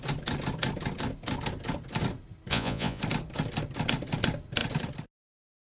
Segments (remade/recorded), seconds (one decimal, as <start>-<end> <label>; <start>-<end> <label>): 0.0-2.5 recorded; 2.5-3.0 remade; 3.0-5.6 recorded